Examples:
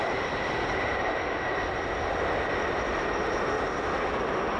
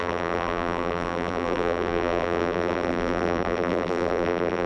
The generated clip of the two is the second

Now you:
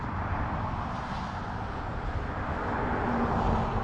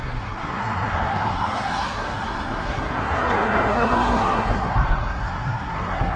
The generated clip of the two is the second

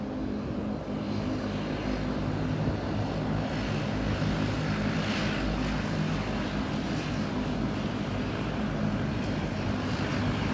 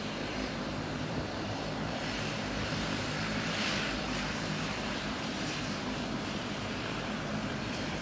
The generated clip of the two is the second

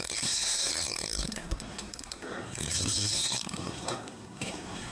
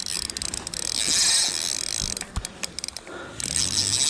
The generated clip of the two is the first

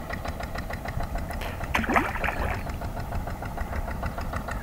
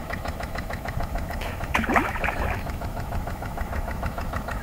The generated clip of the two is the second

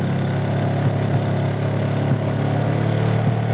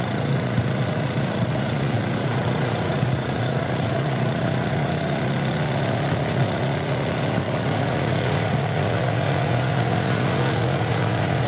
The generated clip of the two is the second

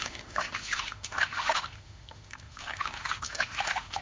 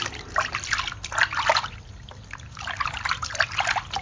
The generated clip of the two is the first